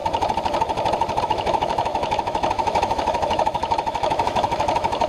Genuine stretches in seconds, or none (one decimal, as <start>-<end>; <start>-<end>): 0.0-1.2